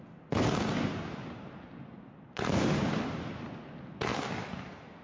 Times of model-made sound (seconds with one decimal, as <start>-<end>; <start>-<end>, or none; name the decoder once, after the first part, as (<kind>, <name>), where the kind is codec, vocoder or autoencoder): none